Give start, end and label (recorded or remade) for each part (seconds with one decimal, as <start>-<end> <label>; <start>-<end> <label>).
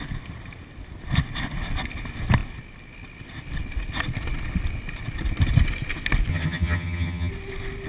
0.0-6.3 recorded; 6.3-7.3 remade; 7.3-7.9 recorded